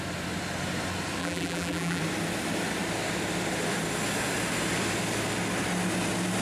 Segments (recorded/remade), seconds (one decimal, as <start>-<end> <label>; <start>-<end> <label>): 0.0-1.2 recorded; 1.2-2.0 remade; 2.0-6.4 recorded